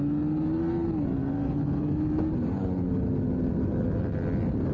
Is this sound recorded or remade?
recorded